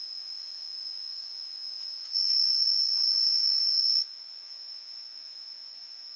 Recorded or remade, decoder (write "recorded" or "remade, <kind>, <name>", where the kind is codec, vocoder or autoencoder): remade, vocoder, Vocos